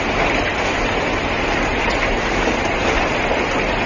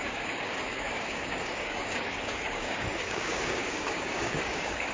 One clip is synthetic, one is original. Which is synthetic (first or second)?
second